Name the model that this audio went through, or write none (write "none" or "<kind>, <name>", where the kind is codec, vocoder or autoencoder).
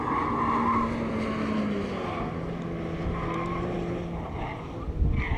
none